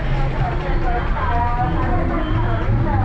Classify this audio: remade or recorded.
recorded